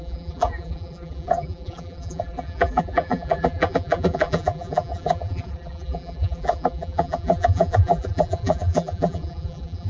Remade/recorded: remade